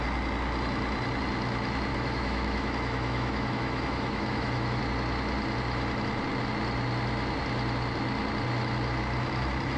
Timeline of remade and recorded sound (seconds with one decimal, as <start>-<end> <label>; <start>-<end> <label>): 0.0-1.9 recorded; 1.9-4.8 remade; 4.8-9.8 recorded